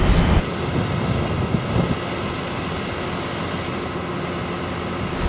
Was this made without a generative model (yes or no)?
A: yes